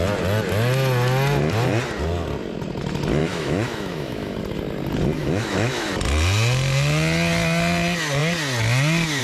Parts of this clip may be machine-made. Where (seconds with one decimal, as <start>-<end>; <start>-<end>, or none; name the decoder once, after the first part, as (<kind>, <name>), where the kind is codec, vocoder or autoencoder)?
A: 3.2-4.4 (autoencoder, DAC-VAE); 5.2-5.9